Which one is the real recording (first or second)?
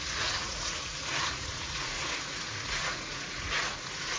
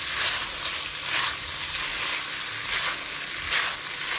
second